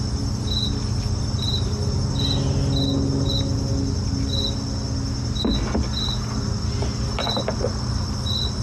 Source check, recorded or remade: recorded